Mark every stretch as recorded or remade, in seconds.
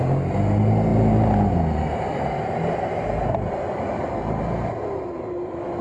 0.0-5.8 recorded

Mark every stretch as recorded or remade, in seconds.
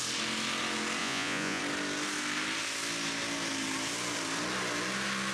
0.0-1.0 recorded; 1.0-1.6 remade; 1.6-5.3 recorded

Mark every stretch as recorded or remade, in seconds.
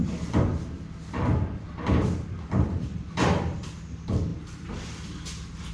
0.0-5.7 recorded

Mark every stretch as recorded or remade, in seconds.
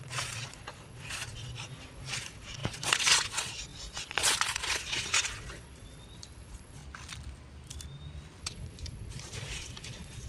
0.0-6.8 remade; 6.8-8.4 recorded; 8.4-10.3 remade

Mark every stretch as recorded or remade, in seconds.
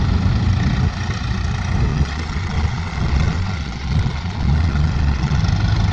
0.0-1.9 recorded; 1.9-5.4 remade; 5.4-5.9 recorded